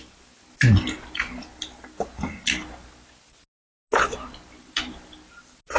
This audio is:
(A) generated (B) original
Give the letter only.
B